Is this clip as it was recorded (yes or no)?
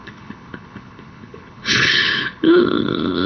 no